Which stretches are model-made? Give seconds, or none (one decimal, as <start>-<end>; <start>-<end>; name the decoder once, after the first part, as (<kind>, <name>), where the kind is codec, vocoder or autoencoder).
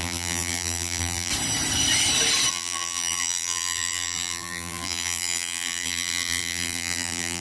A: 0.0-1.3 (vocoder, BigVGAN v2); 2.5-7.4